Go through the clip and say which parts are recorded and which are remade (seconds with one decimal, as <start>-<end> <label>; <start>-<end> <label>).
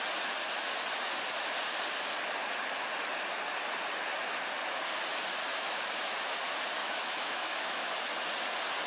0.0-5.4 recorded; 5.4-5.9 remade; 5.9-6.8 recorded; 6.8-7.8 remade; 7.8-8.9 recorded